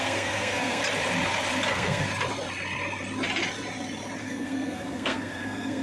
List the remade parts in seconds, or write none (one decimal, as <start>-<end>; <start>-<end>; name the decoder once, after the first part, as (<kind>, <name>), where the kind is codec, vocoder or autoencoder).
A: 0.0-0.8 (codec, SNAC); 1.7-2.1; 4.2-5.8